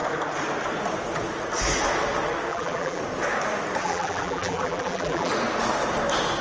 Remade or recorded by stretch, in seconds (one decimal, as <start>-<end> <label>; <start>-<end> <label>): 0.0-2.5 recorded; 2.5-3.0 remade; 3.0-3.8 recorded; 3.8-5.3 remade; 5.3-6.4 recorded